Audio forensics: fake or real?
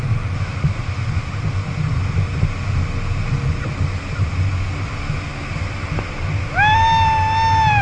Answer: real